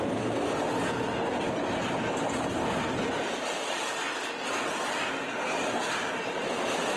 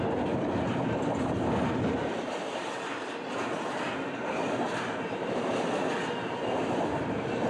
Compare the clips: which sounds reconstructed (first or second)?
second